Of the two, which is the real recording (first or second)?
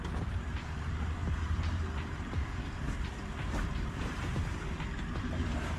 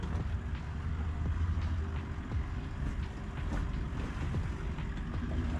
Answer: second